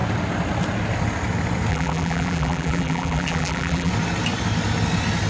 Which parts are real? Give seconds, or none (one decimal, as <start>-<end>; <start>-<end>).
0.0-1.7; 3.9-5.3

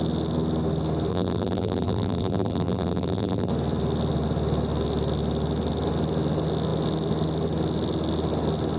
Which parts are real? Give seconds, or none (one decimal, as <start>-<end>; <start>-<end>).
0.0-1.1; 3.5-8.8

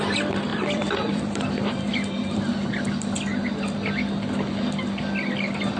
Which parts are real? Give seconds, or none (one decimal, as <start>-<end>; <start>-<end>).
0.0-0.5; 2.4-5.8

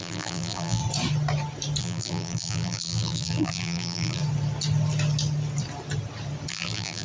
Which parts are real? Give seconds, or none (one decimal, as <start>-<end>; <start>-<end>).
0.8-1.8; 4.2-6.5

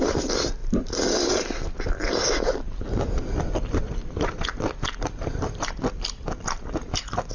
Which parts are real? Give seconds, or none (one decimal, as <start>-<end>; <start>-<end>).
0.0-7.3

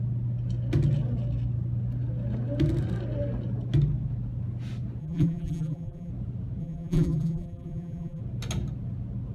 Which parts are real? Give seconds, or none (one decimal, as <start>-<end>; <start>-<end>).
0.0-5.0; 6.1-6.6; 8.2-9.3

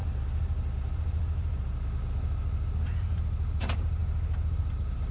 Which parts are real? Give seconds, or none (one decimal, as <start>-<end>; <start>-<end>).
0.0-2.8; 4.0-4.6

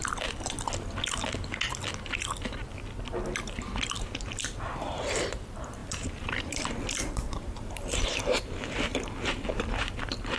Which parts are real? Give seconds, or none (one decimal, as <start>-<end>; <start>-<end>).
0.0-4.7